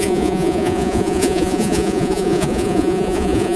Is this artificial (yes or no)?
yes